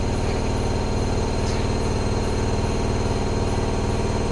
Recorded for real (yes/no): yes